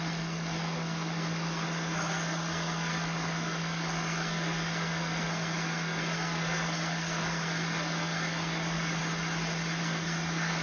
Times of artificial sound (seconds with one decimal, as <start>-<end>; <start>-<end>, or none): 0.0-9.0; 9.8-10.6